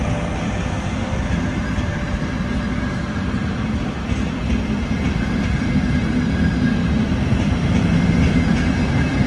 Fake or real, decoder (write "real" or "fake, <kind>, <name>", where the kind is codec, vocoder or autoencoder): real